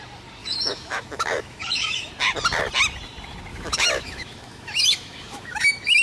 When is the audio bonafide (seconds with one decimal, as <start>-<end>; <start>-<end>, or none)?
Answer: 0.0-0.4; 2.1-3.5